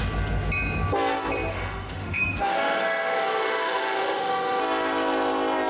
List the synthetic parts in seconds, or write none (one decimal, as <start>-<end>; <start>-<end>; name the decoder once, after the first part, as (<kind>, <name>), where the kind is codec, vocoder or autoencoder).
1.5-4.6 (autoencoder, DAC-VAE)